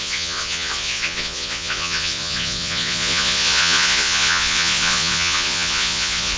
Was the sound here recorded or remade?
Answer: remade